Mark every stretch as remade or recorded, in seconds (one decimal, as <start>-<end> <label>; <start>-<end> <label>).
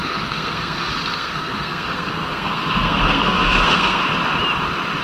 0.0-4.1 remade; 4.1-5.0 recorded